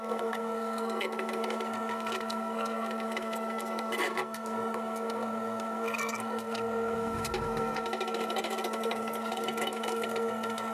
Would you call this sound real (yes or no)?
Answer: no